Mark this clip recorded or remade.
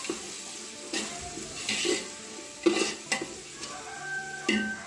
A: recorded